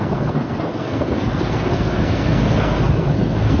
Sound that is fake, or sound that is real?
fake